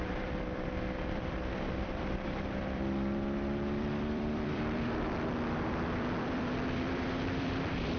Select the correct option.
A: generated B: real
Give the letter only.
A